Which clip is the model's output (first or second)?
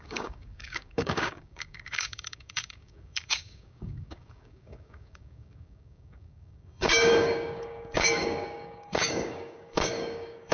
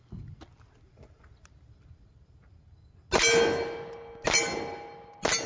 first